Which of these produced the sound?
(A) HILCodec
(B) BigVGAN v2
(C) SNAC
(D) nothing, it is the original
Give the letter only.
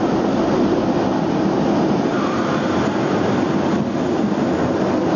D